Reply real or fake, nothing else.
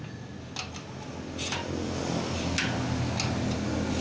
real